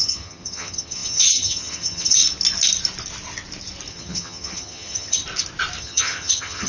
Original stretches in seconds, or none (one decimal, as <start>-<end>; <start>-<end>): 2.2-3.9; 5.2-5.8